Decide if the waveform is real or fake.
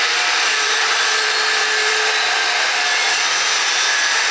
fake